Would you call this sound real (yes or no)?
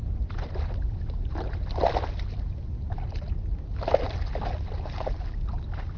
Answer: yes